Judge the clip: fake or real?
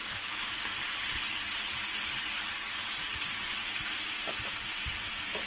fake